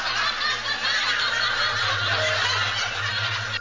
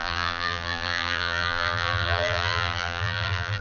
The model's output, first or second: second